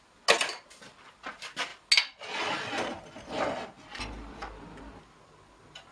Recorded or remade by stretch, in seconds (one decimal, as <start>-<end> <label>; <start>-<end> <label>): 0.0-5.9 recorded